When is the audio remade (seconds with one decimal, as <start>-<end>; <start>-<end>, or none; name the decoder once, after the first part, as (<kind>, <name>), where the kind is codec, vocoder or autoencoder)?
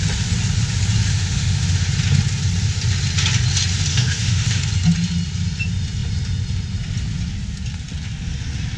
1.1-1.9 (autoencoder, DAC-VAE); 3.9-4.6